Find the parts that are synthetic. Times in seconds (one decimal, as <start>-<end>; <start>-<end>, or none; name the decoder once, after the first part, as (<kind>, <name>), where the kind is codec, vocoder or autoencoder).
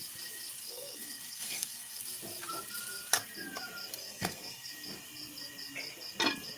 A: 0.6-2.0 (codec, SNAC); 4.0-4.7